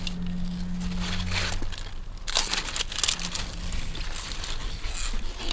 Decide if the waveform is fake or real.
real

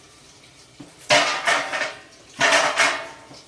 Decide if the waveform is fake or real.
real